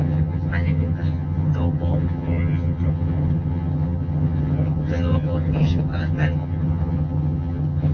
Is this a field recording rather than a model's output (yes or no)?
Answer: no